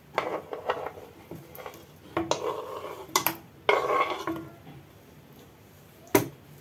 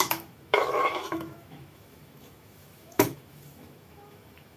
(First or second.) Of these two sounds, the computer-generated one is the second